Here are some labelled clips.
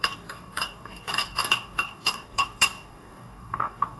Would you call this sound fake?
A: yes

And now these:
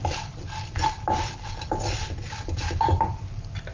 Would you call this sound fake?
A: no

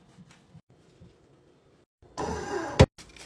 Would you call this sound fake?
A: no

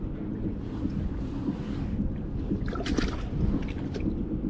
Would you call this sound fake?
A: no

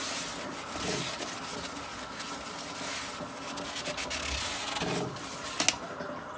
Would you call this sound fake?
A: no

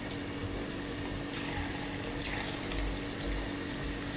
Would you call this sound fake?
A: no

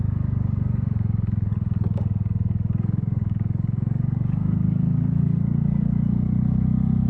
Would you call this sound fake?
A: yes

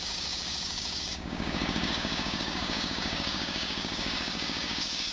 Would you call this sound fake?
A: yes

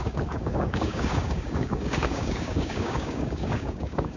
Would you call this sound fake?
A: yes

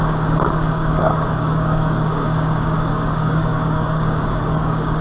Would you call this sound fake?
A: yes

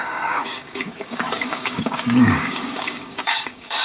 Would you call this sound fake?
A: yes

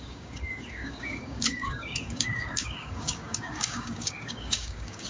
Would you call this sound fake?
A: yes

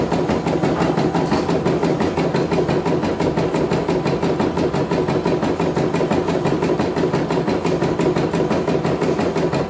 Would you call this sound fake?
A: no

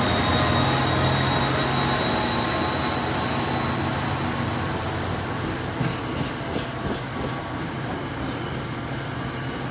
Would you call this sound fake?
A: no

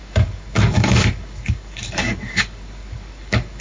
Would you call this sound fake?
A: yes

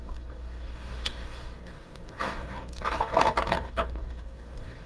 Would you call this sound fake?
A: yes